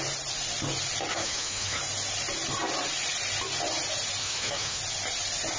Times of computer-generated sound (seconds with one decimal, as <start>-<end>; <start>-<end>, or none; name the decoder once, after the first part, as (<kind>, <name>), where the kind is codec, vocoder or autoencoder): 1.1-1.8 (autoencoder, DAC-VAE); 4.2-4.8